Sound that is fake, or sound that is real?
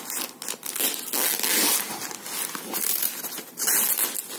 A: real